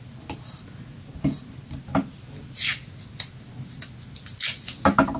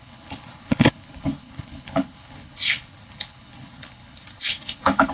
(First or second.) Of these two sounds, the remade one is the second